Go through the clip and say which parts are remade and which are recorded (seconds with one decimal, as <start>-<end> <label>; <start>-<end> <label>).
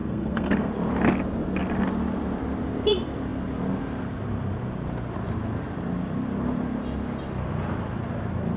0.0-0.7 remade; 0.7-8.6 recorded